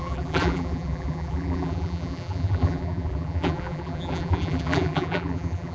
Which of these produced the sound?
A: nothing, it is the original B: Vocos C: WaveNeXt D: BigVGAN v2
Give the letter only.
D